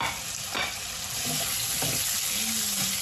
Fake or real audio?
real